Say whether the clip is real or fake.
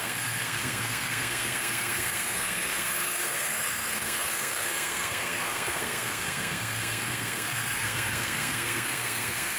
fake